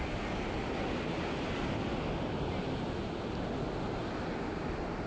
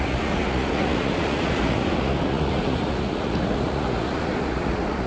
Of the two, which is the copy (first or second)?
second